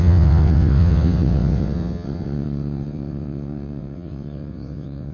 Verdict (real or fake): fake